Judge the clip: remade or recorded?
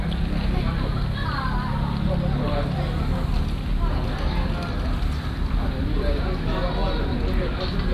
recorded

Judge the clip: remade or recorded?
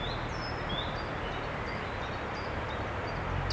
recorded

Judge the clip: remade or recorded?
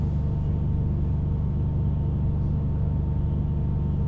recorded